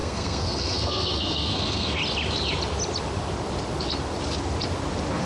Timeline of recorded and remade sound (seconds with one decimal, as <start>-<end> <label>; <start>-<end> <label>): 0.0-2.0 remade; 2.0-5.2 recorded